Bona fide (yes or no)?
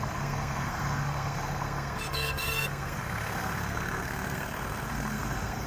no